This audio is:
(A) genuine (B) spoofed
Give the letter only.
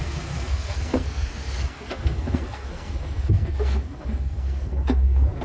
B